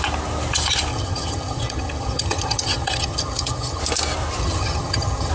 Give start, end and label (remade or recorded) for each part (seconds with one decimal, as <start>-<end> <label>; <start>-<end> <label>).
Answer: 0.0-0.9 recorded; 0.9-3.8 remade; 3.8-4.4 recorded; 4.4-5.3 remade